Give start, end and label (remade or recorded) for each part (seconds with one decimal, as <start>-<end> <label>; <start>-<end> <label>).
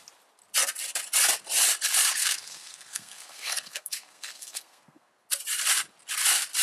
0.0-2.2 recorded; 2.2-5.1 remade; 5.1-6.6 recorded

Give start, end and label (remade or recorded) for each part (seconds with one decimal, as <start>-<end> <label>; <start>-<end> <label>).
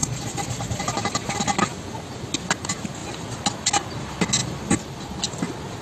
0.0-1.4 remade; 1.4-4.4 recorded; 4.4-5.2 remade; 5.2-5.8 recorded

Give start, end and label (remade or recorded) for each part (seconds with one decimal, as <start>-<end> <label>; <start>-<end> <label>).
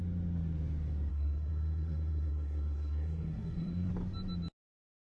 0.0-1.1 recorded; 1.1-3.9 remade; 3.9-5.0 recorded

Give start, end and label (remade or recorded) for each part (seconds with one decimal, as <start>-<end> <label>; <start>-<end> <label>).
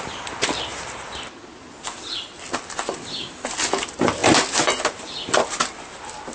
0.0-6.3 recorded